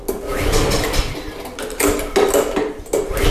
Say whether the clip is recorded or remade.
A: recorded